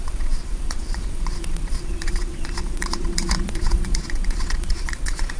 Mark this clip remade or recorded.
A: remade